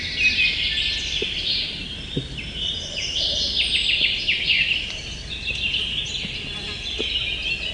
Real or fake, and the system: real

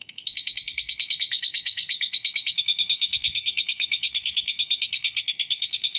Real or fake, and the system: fake, codec, SNAC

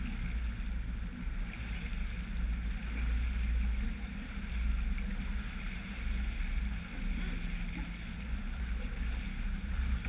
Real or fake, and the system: real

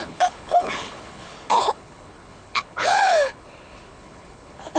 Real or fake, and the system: fake, codec, HILCodec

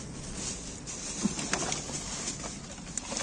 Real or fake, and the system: real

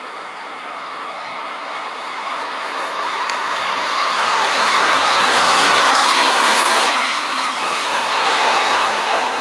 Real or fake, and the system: fake, codec, SNAC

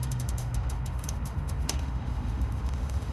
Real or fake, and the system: fake, autoencoder, DAC-VAE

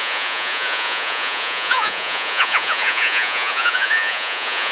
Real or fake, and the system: fake, vocoder, Vocos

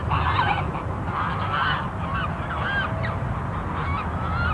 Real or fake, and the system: real